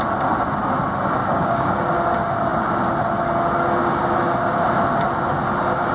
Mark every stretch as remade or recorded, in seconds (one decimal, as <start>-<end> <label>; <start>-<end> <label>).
0.0-1.2 recorded; 1.2-1.8 remade; 1.8-5.9 recorded